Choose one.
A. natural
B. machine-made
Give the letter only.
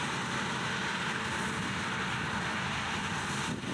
A